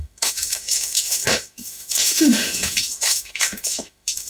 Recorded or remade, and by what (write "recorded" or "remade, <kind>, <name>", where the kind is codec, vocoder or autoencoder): remade, autoencoder, DAC-VAE